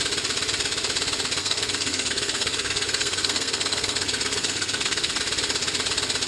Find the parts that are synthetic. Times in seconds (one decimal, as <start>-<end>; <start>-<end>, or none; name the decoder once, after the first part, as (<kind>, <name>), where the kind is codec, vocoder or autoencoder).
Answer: 1.4-5.2 (codec, SNAC)